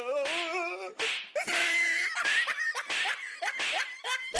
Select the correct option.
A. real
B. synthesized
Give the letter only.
A